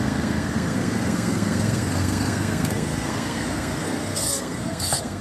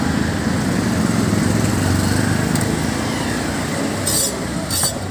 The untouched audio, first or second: second